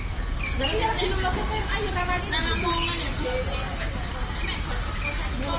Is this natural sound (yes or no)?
yes